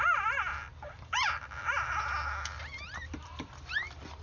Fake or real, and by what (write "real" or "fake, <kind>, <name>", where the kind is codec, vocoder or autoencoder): real